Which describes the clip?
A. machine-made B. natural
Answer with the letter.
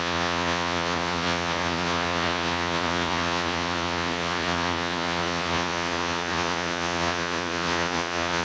A